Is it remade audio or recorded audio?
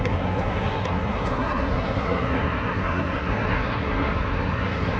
remade